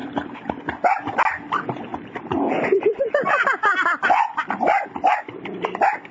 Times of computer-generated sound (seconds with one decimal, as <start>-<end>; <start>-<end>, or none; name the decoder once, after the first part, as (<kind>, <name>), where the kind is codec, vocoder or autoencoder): 0.0-0.5 (vocoder, BigVGAN v2); 1.9-3.3